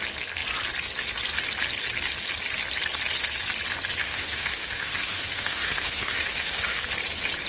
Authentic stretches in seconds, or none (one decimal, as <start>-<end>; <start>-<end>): 0.0-4.0; 6.8-7.5